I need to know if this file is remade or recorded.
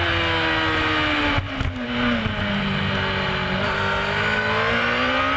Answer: recorded